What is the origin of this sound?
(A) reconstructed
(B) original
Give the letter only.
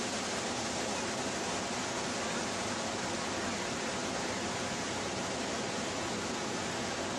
B